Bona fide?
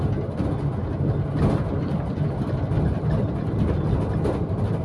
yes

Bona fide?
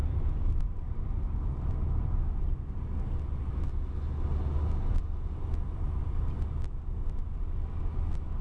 yes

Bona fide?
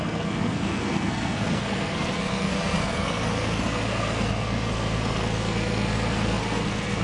no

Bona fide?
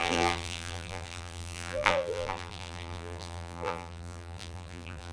no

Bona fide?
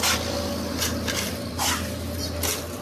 yes